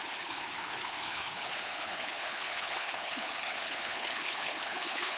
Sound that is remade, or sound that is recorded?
remade